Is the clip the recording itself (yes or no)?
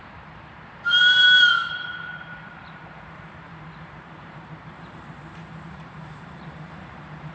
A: no